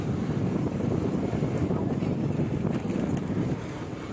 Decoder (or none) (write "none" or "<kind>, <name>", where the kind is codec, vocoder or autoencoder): none